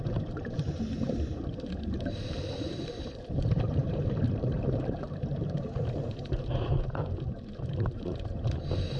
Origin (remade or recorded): remade